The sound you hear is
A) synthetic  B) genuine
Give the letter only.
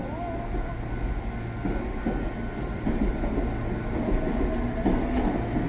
B